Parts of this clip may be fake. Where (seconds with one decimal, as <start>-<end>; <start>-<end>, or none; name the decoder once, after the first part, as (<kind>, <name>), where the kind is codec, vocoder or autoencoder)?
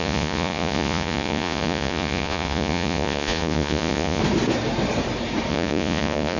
0.0-4.2 (vocoder, Vocos); 5.5-6.4